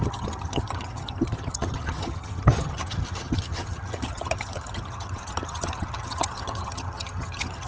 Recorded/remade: remade